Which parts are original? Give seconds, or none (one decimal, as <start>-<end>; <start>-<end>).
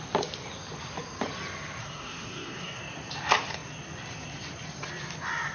0.0-1.8; 2.8-5.5